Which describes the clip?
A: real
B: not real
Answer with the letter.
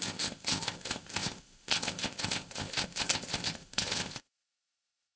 B